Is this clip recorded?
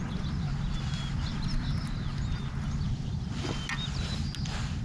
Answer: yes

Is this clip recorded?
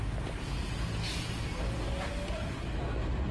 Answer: yes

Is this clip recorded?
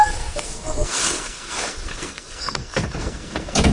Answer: no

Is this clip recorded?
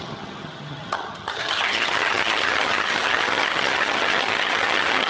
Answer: no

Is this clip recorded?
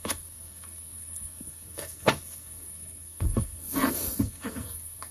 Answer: no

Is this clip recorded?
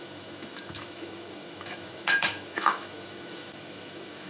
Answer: no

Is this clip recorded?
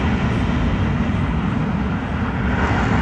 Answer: yes